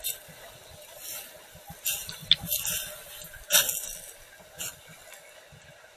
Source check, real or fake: real